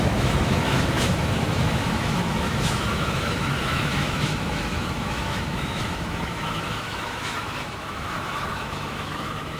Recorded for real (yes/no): no